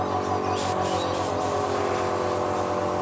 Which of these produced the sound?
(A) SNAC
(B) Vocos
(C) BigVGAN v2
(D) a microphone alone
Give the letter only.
D